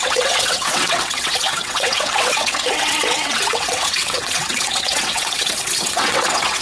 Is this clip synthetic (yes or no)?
yes